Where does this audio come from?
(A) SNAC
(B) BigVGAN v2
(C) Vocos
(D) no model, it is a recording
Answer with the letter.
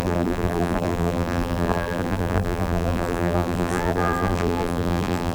B